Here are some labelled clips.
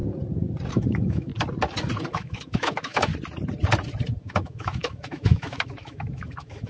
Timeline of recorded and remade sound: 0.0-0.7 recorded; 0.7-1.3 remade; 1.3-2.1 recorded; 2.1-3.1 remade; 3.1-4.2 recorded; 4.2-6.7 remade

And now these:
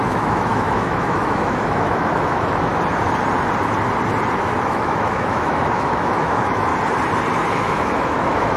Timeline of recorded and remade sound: 0.0-2.7 remade; 2.7-4.3 recorded; 4.3-6.7 remade; 6.7-7.5 recorded; 7.5-8.6 remade

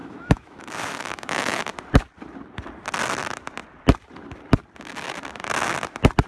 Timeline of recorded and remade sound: 0.0-1.6 remade; 1.6-6.3 recorded

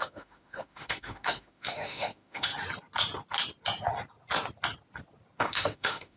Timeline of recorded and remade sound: 0.0-2.5 remade; 2.5-5.4 recorded; 5.4-6.2 remade